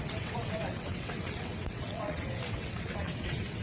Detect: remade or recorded remade